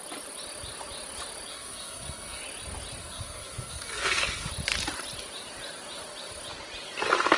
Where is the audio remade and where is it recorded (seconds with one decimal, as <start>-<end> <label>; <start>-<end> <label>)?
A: 0.0-1.5 recorded; 1.5-2.4 remade; 2.4-3.0 recorded; 3.0-4.5 remade; 4.5-7.4 recorded